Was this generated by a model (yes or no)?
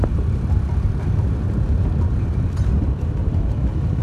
no